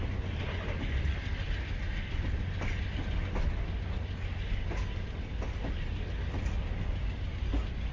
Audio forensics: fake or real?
real